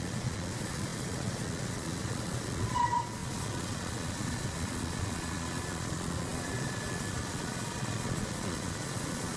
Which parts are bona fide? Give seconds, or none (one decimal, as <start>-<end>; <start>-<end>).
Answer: none